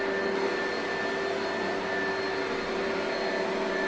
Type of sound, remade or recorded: recorded